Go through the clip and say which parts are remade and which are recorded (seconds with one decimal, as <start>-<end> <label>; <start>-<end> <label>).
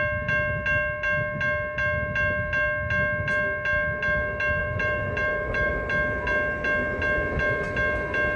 0.0-4.6 recorded; 4.6-5.7 remade; 5.7-8.4 recorded